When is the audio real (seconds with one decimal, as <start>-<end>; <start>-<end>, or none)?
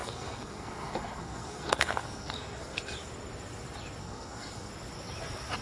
2.8-4.0; 4.7-5.6